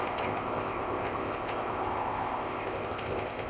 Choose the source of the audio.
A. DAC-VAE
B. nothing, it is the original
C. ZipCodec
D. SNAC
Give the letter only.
C